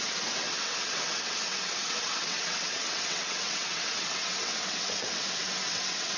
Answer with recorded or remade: remade